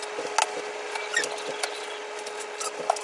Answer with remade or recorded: recorded